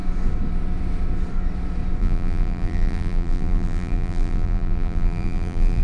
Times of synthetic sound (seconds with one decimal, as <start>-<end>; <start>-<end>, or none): 2.0-5.8